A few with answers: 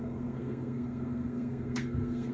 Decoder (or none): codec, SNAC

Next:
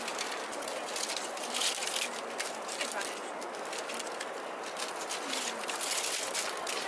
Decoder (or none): none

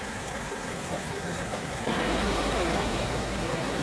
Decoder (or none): codec, SNAC